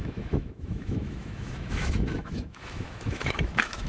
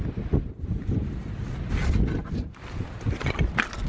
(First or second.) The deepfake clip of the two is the first